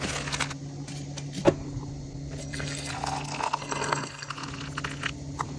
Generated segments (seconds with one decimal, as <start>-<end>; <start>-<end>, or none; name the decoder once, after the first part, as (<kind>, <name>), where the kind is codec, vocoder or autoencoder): 2.4-2.9 (codec, SNAC); 3.6-4.3